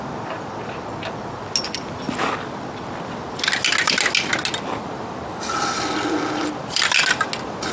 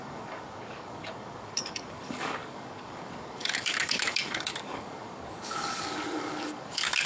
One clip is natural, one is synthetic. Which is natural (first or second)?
first